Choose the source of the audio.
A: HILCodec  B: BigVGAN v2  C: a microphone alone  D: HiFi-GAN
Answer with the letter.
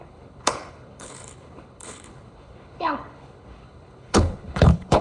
A